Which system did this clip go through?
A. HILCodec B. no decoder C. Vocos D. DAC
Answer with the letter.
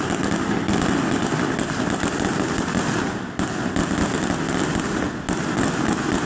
B